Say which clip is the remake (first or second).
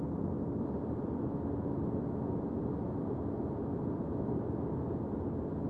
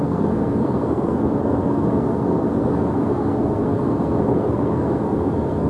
second